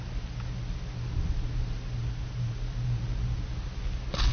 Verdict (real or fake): real